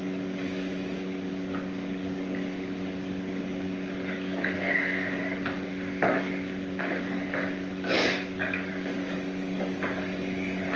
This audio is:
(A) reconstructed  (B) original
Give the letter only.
A